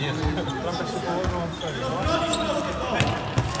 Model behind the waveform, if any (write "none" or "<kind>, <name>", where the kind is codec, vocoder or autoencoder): none